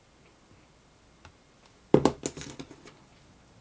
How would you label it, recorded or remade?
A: recorded